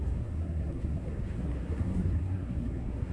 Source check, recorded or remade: remade